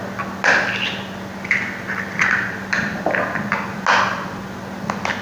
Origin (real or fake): real